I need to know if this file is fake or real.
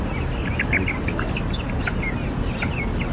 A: real